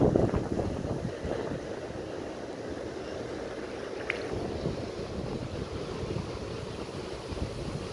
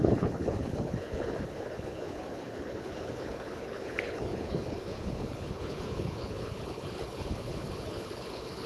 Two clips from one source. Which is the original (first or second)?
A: first